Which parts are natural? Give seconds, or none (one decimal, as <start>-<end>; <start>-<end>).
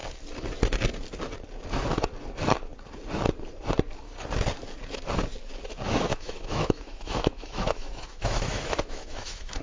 0.0-6.1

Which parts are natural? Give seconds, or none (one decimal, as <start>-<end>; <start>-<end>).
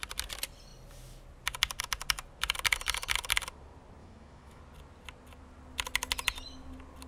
0.0-4.0; 4.6-7.1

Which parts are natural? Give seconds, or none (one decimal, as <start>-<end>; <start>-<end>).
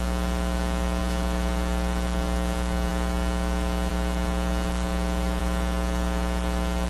none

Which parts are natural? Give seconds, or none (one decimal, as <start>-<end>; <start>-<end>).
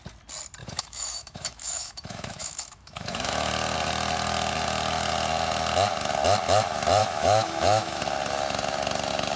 0.0-0.6; 3.5-7.0; 8.0-9.4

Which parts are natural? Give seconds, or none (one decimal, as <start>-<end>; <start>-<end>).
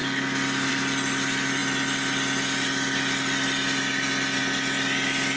0.0-5.4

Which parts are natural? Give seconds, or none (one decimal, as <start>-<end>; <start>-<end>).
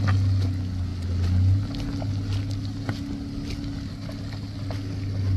0.0-5.4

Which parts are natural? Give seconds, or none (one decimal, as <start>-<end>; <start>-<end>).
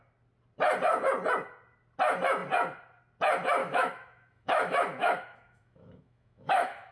0.0-3.6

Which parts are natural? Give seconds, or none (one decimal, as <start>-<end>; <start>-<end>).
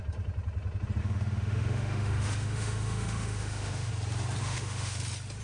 0.0-1.0; 3.9-4.4; 5.0-5.4